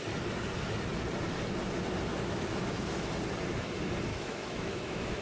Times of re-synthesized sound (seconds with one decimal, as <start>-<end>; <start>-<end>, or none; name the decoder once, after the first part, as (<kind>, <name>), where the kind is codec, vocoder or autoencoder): 2.1-3.1 (autoencoder, DAC-VAE); 4.1-5.2